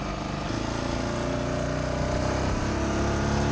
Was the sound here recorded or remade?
recorded